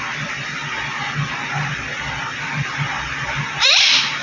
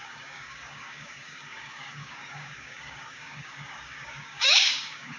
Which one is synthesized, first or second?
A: second